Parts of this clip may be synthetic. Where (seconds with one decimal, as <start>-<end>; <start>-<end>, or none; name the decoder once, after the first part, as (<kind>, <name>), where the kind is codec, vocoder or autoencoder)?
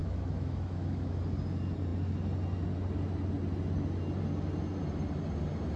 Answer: 0.0-1.2 (autoencoder, DAC-VAE)